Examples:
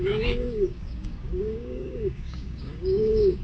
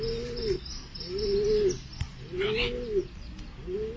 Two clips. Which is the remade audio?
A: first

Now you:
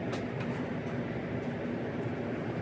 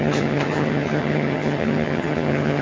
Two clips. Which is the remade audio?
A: second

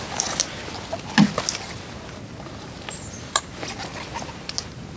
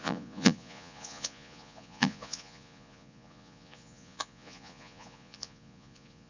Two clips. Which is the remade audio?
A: second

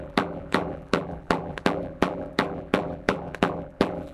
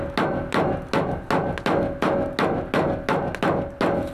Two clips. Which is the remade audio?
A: first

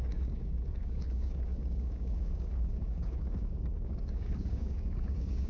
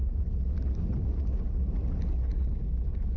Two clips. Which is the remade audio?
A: first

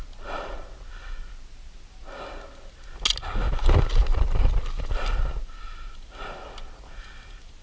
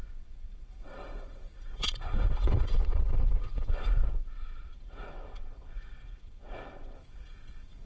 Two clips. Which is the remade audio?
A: second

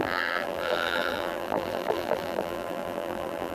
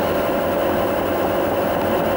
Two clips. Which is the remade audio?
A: first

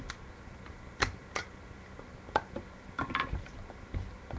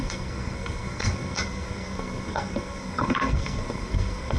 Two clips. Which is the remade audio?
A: second